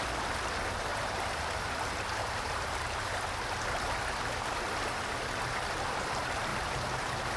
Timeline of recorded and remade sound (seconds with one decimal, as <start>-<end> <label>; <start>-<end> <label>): 0.0-0.9 recorded; 0.9-3.1 remade; 3.1-6.5 recorded; 6.5-7.0 remade; 7.0-7.4 recorded